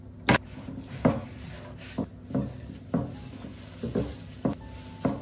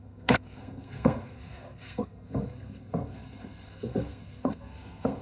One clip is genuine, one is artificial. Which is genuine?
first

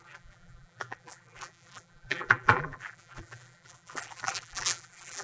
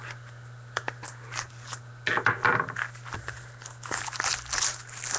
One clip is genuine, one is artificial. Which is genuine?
second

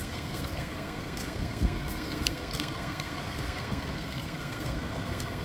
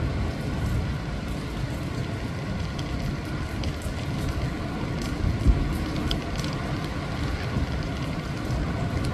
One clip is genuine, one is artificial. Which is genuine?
second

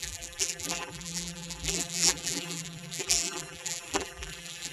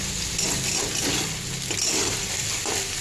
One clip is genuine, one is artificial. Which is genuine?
second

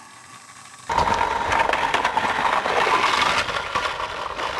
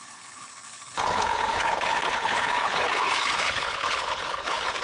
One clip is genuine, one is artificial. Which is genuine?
first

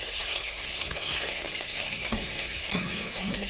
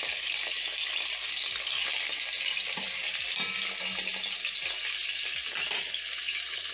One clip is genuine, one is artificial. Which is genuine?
second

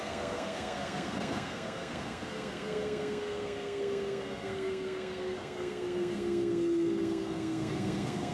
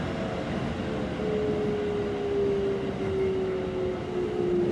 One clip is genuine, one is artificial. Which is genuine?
second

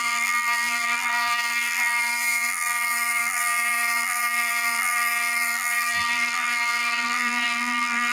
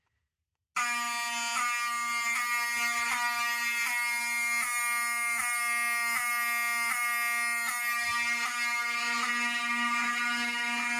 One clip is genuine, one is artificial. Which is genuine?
second